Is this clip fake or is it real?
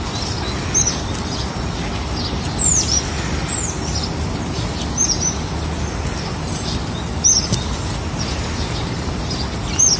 real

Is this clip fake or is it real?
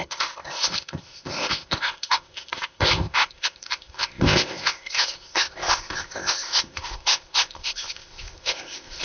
fake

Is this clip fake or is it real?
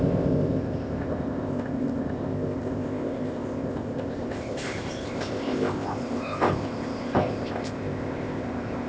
fake